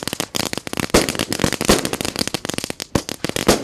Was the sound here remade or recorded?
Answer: recorded